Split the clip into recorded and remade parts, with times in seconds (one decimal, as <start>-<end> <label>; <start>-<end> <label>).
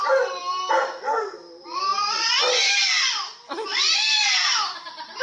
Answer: 0.0-0.7 recorded; 0.7-5.2 remade